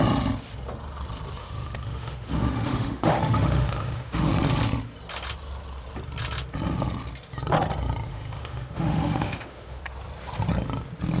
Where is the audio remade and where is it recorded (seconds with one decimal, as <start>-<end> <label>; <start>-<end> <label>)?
0.0-1.4 recorded; 1.4-4.3 remade; 4.3-8.1 recorded; 8.1-9.8 remade; 9.8-11.2 recorded